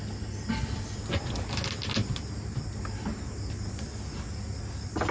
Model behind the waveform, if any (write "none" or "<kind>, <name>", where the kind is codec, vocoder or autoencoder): none